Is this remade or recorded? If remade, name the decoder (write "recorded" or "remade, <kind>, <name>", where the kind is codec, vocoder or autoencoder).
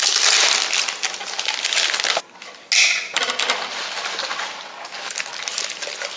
recorded